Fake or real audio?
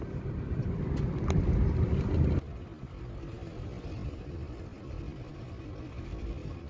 real